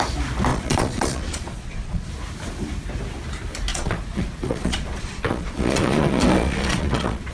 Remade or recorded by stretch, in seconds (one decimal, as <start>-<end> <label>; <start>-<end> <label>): 0.0-0.5 recorded; 0.5-2.1 remade; 2.1-3.7 recorded; 3.7-7.3 remade